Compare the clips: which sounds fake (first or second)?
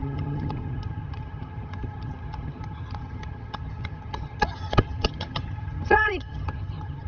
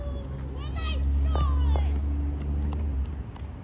first